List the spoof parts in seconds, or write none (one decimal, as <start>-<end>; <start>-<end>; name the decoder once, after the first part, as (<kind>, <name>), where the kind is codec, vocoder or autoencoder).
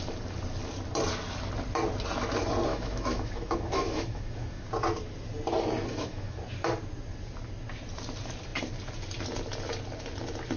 2.7-4.7 (autoencoder, DAC-VAE); 5.9-6.4